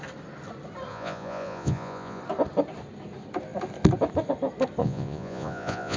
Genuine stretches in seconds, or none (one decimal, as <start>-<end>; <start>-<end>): 0.0-0.9; 2.2-4.8

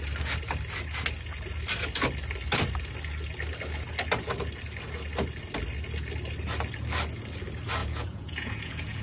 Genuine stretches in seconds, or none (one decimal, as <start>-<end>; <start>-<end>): 0.0-7.8

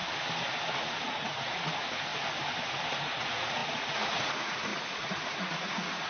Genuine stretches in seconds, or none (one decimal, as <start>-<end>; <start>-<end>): 0.0-0.8; 2.1-2.9

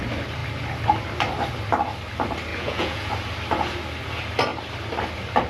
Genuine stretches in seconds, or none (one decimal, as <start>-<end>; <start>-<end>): 0.0-2.5; 3.1-5.5

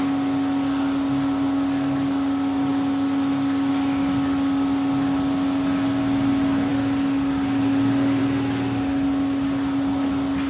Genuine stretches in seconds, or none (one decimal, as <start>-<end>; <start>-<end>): 0.0-10.5

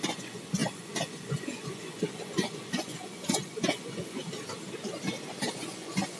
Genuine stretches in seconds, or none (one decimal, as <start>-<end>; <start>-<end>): 4.2-5.5

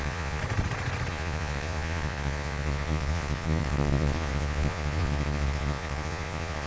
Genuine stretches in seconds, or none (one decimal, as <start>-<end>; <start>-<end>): 0.4-1.1

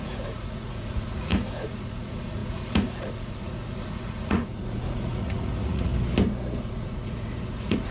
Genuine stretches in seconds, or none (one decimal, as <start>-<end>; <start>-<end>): 5.9-6.6